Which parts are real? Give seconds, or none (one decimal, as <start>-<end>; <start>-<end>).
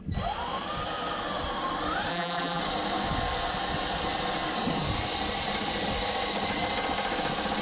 0.0-2.1; 2.6-7.6